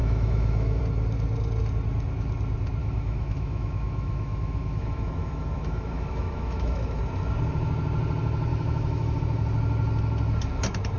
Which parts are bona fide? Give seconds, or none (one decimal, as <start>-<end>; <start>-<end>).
0.8-2.8; 7.0-8.5; 9.2-11.0